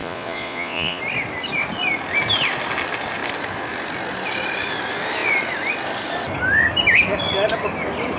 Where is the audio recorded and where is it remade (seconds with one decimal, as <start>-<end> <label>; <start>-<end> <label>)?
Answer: 0.0-1.0 remade; 1.0-8.2 recorded

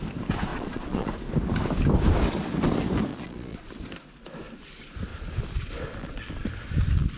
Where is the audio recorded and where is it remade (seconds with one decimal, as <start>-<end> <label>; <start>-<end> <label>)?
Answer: 0.0-0.5 recorded; 0.5-1.1 remade; 1.1-3.1 recorded; 3.1-3.7 remade; 3.7-7.2 recorded

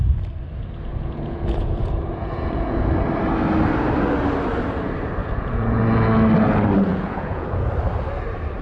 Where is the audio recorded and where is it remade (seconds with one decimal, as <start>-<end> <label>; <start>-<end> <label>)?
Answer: 0.0-0.9 recorded; 0.9-2.8 remade; 2.8-5.2 recorded; 5.2-5.8 remade; 5.8-6.9 recorded; 6.9-7.7 remade; 7.7-8.6 recorded

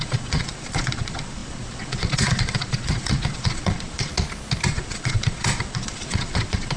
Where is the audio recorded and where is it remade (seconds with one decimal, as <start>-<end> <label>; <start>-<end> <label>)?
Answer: 0.0-4.1 remade; 4.1-4.7 recorded; 4.7-6.8 remade

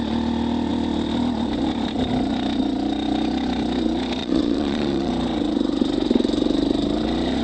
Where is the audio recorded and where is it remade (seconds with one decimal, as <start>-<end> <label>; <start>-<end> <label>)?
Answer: 0.0-4.2 recorded; 4.2-5.1 remade; 5.1-7.4 recorded

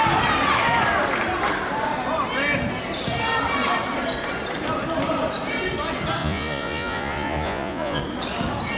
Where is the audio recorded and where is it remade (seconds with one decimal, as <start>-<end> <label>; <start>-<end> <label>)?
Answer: 0.0-6.2 recorded; 6.2-8.0 remade; 8.0-8.8 recorded

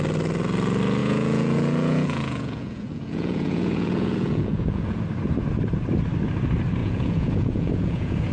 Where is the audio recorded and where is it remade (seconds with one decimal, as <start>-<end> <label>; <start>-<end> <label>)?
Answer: 0.0-1.0 recorded; 1.0-5.0 remade; 5.0-6.8 recorded; 6.8-8.3 remade